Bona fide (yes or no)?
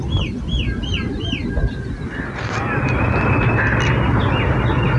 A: yes